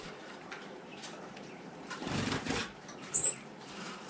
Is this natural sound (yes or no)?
no